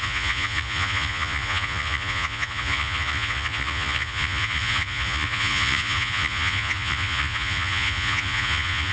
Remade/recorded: remade